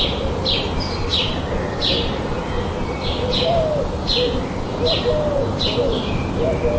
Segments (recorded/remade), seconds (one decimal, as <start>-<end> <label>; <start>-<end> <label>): 0.0-6.8 recorded

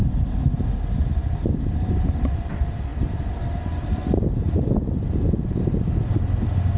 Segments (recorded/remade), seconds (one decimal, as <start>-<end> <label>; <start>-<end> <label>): 0.0-1.2 recorded; 1.2-2.5 remade; 2.5-2.9 recorded; 2.9-4.7 remade; 4.7-6.8 recorded

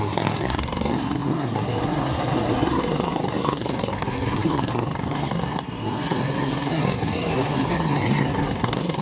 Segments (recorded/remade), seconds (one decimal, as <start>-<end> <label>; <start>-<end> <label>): 0.0-9.0 remade

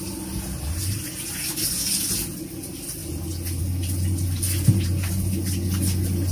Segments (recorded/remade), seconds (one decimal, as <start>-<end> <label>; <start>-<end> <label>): 0.0-6.3 recorded

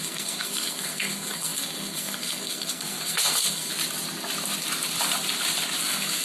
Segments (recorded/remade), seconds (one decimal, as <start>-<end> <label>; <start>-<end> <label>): 0.0-3.7 remade; 3.7-5.8 recorded; 5.8-6.2 remade